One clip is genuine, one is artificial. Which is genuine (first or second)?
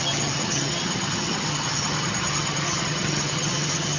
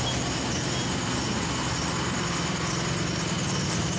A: second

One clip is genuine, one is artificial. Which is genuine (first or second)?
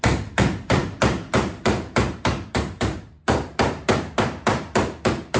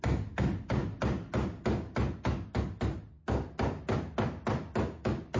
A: second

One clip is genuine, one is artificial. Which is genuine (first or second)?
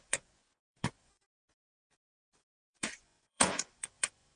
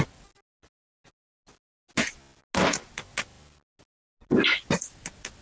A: second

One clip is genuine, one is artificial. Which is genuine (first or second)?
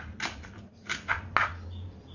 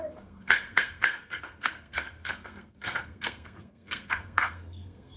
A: first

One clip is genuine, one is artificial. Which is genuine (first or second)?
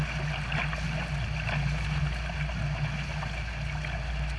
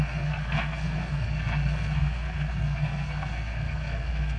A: first